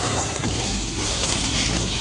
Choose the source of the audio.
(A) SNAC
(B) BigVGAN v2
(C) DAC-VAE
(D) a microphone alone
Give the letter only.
A